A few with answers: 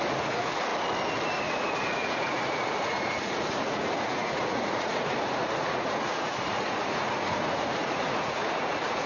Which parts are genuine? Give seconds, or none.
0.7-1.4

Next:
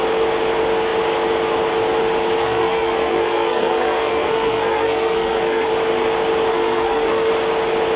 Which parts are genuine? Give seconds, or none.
0.0-2.4; 5.7-6.5; 7.3-8.0

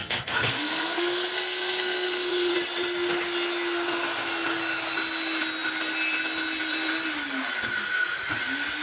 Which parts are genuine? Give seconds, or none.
2.5-8.8

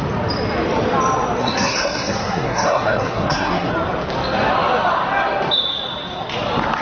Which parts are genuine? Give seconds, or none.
0.0-1.4; 3.7-6.8

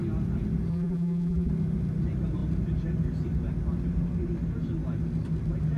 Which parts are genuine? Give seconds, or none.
0.0-0.7; 1.5-5.8

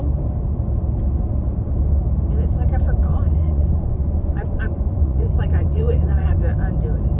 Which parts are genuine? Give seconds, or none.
0.0-3.0; 6.4-7.2

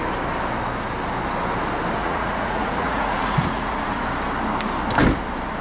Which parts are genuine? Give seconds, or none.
0.0-2.0; 4.0-5.6